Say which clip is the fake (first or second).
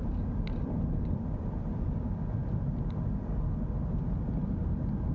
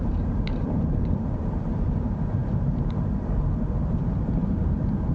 second